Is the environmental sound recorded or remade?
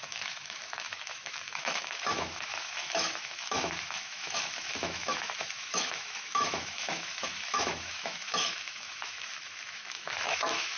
remade